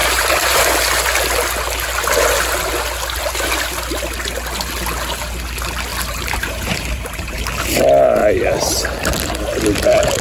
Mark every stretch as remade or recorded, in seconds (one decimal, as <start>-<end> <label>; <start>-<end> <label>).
0.0-0.6 remade; 0.6-5.9 recorded; 5.9-7.4 remade; 7.4-10.2 recorded